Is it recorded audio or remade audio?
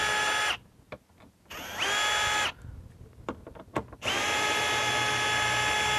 recorded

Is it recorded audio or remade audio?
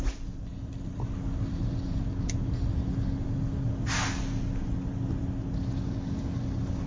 recorded